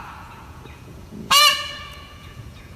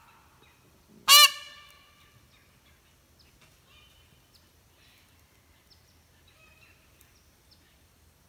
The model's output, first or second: first